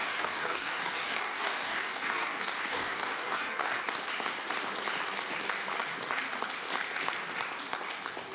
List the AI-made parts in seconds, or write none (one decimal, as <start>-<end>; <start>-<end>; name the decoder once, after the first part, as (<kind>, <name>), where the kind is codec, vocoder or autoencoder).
0.0-3.8 (codec, DAC)